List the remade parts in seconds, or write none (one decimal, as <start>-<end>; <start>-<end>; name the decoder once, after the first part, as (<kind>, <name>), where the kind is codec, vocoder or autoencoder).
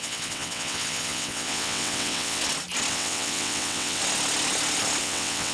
0.0-2.4 (vocoder, WaveNeXt); 2.9-4.0; 5.0-5.5